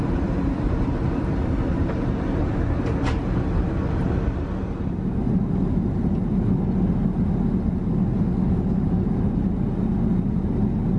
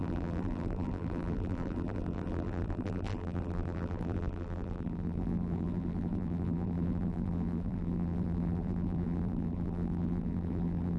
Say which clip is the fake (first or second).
second